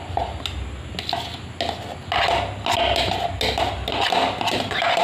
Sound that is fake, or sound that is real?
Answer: real